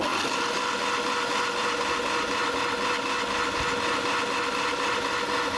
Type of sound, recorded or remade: recorded